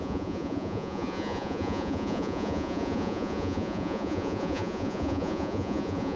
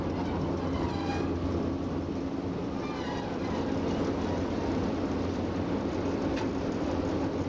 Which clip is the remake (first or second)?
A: first